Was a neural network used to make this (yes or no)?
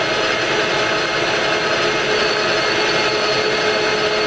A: no